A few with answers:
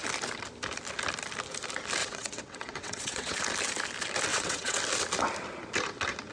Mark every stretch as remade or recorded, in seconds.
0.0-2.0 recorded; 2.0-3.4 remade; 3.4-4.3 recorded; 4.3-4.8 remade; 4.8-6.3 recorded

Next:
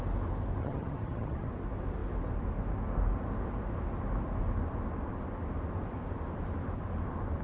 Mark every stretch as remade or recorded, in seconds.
0.0-0.6 recorded; 0.6-1.5 remade; 1.5-7.4 recorded

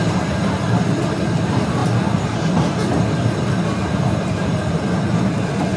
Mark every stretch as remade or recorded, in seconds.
0.0-1.8 recorded; 1.8-5.3 remade; 5.3-5.8 recorded

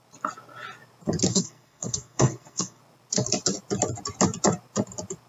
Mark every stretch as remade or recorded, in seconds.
0.0-1.3 recorded; 1.3-2.8 remade; 2.8-5.3 recorded

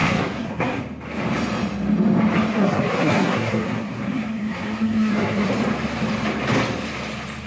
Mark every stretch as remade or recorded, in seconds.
0.0-0.8 remade; 0.8-2.5 recorded; 2.5-5.5 remade; 5.5-7.5 recorded

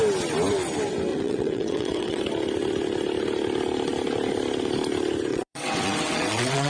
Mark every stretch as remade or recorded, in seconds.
0.0-1.1 recorded; 1.1-2.2 remade; 2.2-5.3 recorded; 5.3-6.7 remade

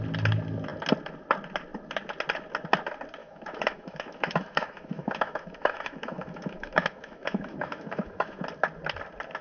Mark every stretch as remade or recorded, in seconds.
0.0-3.2 recorded; 3.2-8.4 remade; 8.4-9.4 recorded